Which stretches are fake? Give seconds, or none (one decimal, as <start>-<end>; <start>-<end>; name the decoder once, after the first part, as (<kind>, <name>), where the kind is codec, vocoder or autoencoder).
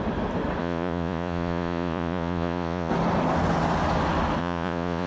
0.6-2.9 (vocoder, Vocos); 4.4-5.1